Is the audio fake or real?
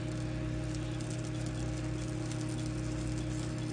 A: real